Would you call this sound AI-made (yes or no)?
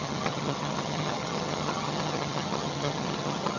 yes